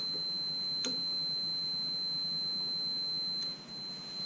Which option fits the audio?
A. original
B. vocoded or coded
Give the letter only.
A